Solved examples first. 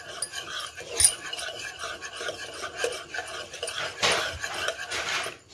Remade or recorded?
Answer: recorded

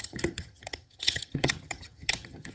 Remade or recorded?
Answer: remade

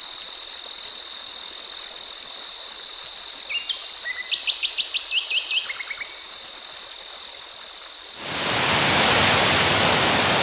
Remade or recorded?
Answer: recorded